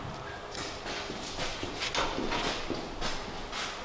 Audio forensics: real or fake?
real